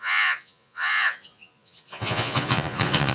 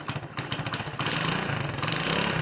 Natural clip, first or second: second